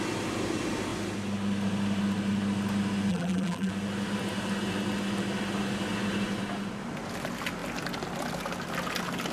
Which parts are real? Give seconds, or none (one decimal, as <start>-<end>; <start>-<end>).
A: 0.0-3.1; 3.7-9.3